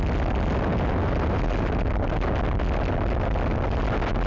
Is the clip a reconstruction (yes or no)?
no